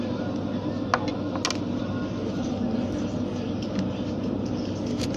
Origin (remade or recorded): recorded